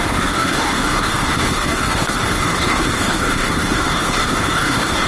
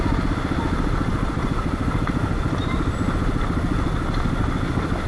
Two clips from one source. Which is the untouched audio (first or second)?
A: second